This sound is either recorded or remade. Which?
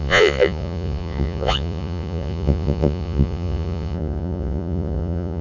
remade